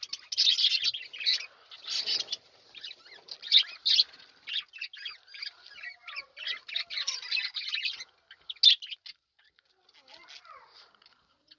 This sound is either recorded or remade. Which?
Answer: recorded